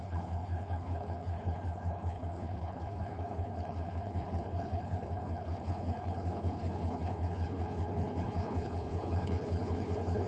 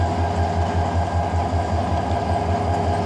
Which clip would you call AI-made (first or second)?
first